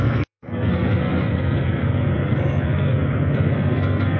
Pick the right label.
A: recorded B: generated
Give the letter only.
B